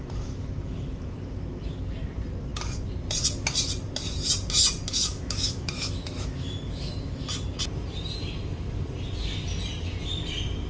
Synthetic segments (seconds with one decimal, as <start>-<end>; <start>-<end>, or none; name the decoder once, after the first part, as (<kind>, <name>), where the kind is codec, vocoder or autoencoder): 0.0-1.8 (autoencoder, DAC-VAE); 4.9-7.2